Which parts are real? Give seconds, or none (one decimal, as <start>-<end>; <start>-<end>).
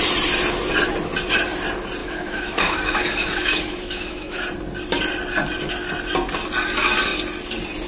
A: 0.0-2.0; 4.4-7.9